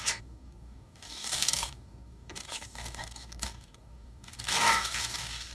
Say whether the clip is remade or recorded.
remade